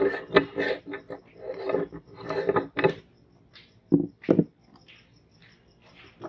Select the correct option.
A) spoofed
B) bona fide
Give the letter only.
B